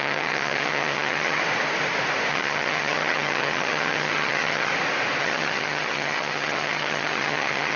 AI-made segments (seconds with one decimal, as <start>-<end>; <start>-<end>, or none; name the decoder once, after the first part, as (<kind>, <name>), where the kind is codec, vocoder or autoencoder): 0.0-1.4 (vocoder, HiFi-GAN); 2.3-4.7; 5.2-7.8